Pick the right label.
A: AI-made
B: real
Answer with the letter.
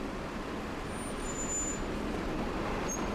B